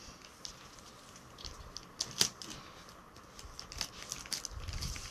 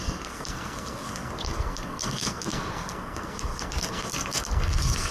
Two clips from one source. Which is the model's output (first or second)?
second